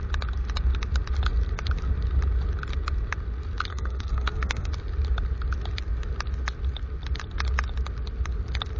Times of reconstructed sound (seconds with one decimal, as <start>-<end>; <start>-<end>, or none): 3.7-4.7